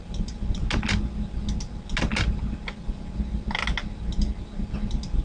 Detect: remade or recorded recorded